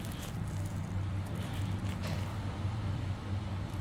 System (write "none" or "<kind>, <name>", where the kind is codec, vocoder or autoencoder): none